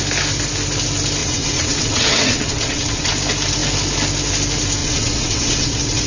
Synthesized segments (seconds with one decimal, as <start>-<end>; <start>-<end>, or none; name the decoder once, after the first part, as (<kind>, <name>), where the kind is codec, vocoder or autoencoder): 1.2-3.1 (vocoder, WaveNeXt); 4.8-6.1